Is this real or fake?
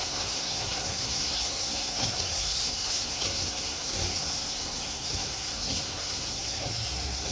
fake